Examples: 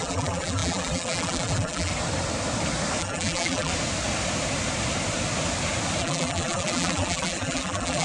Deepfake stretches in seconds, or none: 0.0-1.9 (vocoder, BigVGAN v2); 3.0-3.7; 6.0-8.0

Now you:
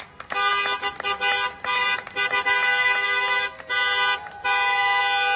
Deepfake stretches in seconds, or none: none

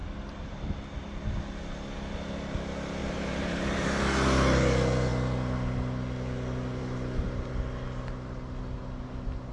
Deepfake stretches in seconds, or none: 3.0-4.0 (vocoder, BigVGAN v2)